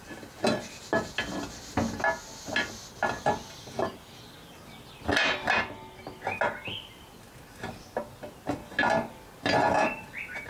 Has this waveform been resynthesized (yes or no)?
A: no